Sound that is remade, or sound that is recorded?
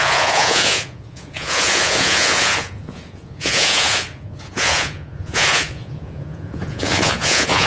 remade